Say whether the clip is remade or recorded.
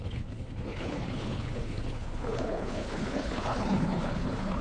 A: remade